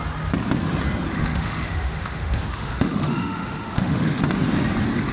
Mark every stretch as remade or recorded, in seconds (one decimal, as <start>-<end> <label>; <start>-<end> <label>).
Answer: 0.0-1.1 recorded; 1.1-4.2 remade; 4.2-5.1 recorded